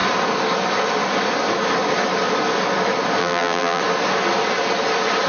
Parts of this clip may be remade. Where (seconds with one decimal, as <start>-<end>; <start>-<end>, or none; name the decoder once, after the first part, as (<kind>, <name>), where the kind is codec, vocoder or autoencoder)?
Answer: 3.2-3.8 (vocoder, BigVGAN v2)